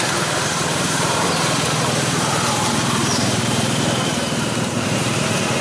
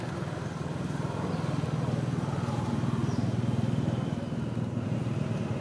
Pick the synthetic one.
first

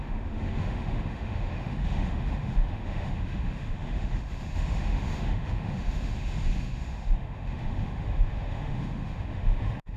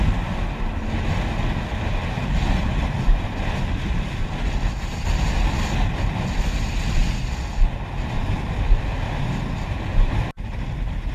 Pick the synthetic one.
first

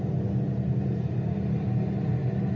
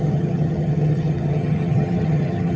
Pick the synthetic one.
second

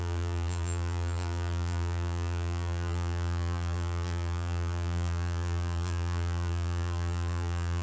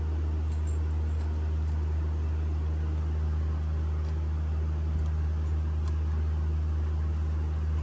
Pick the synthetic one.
first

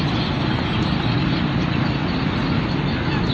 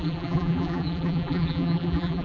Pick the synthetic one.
second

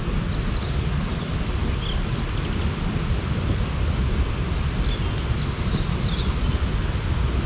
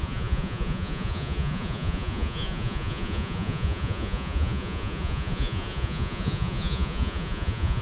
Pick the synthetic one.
second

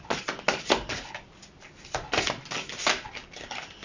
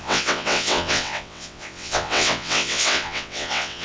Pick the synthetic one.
second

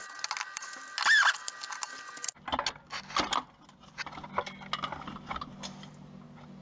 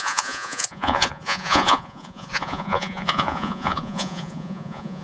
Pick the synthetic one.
second